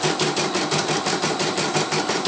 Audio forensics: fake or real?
real